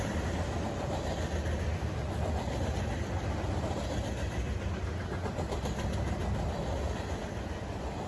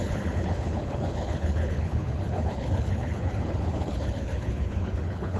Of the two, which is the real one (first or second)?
first